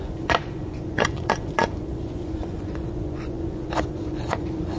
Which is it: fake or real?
fake